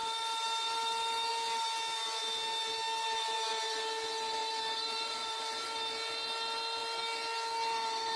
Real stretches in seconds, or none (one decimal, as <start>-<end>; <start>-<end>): 0.0-4.4; 5.4-8.2